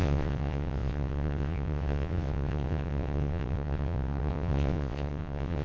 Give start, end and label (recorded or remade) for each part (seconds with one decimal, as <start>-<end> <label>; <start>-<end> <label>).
0.0-5.6 remade